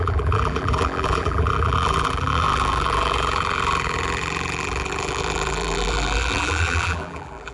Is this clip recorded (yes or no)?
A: no